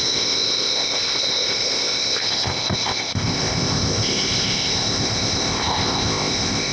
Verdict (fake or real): fake